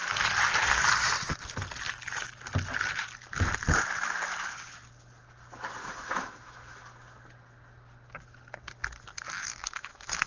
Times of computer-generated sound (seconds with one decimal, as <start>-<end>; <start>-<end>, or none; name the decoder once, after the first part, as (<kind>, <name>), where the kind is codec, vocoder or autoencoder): 5.8-6.8 (autoencoder, DAC-VAE); 9.4-10.3